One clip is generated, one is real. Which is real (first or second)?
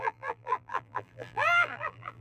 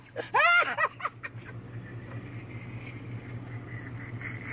second